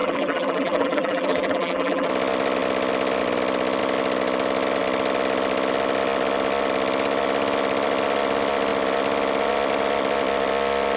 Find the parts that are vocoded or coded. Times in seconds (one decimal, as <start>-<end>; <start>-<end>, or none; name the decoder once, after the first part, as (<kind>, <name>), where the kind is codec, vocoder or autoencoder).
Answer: 0.0-2.1 (vocoder, BigVGAN v2)